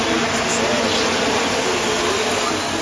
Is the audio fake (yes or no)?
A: no